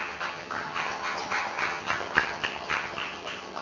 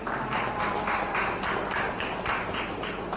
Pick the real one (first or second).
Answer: second